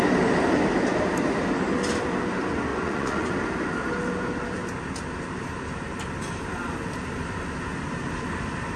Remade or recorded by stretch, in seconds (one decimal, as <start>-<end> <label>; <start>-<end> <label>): 0.0-2.7 recorded; 2.7-3.3 remade; 3.3-8.8 recorded